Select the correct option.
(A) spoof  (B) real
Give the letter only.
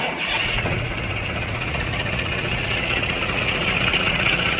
A